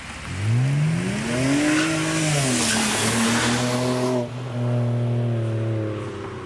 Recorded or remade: recorded